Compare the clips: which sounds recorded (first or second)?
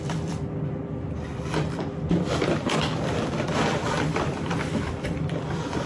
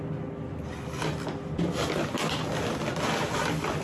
second